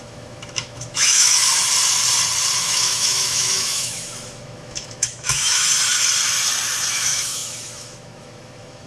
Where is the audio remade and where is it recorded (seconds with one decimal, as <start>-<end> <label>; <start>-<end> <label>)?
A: 0.0-1.4 remade; 1.4-2.6 recorded; 2.6-5.7 remade; 5.7-6.9 recorded; 6.9-8.9 remade